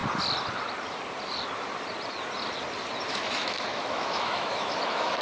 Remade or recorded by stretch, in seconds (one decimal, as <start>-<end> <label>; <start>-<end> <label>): 0.0-3.1 recorded; 3.1-5.2 remade